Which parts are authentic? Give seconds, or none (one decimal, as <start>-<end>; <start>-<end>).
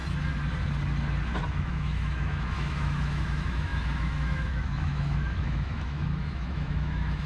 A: 0.0-1.5